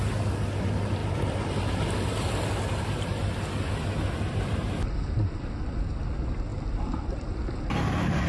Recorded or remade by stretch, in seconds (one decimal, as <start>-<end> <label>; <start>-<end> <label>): 0.0-8.3 recorded